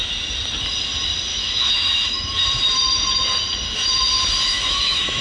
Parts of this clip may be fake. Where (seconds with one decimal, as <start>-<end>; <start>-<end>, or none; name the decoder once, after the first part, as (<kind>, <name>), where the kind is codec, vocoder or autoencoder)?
1.3-2.4 (autoencoder, DAC-VAE); 4.5-5.2